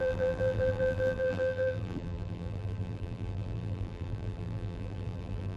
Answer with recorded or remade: remade